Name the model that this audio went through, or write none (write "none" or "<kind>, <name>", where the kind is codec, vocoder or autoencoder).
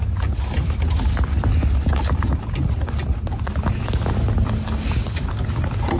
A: none